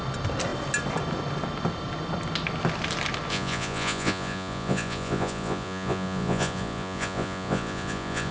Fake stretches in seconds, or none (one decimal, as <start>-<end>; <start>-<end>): 3.3-8.3